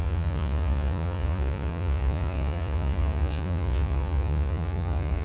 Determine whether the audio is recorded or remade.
remade